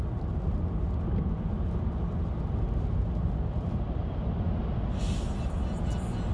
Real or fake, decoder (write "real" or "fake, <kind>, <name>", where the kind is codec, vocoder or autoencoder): real